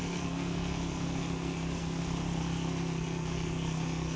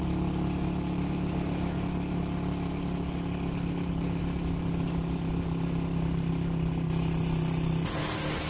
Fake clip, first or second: first